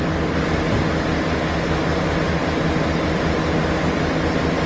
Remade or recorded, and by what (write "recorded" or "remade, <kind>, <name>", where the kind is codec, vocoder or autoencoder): recorded